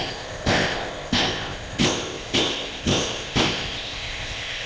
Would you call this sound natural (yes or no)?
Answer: no